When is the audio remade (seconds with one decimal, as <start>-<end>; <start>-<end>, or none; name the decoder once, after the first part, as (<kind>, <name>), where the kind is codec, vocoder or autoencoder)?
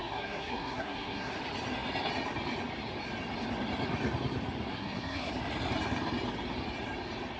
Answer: 0.0-1.3 (codec, SNAC); 4.7-5.3